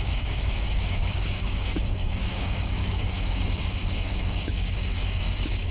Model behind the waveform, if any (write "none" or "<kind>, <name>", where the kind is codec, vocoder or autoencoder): codec, DAC